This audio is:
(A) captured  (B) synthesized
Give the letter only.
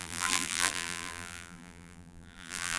B